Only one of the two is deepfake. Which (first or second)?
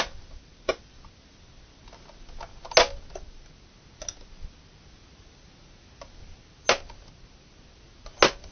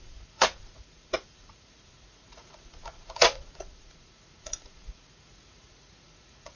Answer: second